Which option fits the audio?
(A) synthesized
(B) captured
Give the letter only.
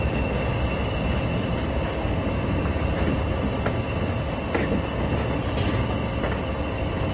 B